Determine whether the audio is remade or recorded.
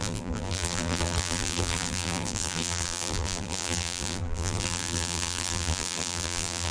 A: remade